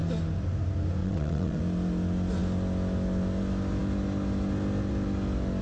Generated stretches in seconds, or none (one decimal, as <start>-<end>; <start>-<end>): 1.0-1.6

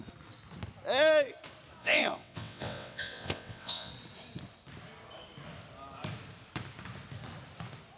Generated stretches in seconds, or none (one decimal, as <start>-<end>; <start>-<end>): 1.8-3.9